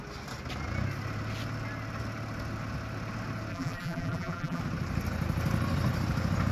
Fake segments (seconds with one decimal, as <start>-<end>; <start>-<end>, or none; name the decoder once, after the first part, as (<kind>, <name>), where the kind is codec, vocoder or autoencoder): 3.5-4.6 (vocoder, BigVGAN v2)

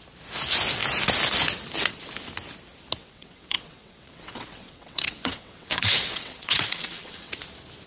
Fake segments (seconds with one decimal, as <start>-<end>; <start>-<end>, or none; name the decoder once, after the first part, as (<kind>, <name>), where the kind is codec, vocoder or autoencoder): 3.0-7.3 (vocoder, WaveNeXt)

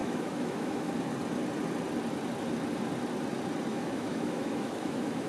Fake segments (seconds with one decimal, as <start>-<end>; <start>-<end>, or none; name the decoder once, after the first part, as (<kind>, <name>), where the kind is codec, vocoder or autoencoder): 0.0-0.9 (autoencoder, DAC-VAE); 3.7-5.3

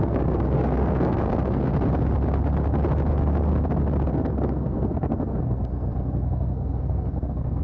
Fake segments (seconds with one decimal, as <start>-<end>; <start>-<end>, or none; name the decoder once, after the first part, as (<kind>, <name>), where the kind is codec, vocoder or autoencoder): 0.0-1.7 (codec, SNAC); 3.1-3.5; 4.1-7.6

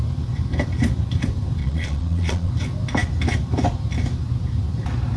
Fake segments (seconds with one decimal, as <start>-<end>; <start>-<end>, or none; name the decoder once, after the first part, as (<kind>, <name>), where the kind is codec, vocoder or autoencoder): 1.6-2.5 (vocoder, Vocos)